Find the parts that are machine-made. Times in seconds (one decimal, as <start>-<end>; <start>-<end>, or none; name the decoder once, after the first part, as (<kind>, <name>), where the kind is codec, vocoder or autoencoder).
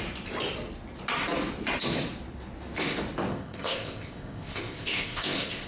3.3-5.7 (codec, ZipCodec)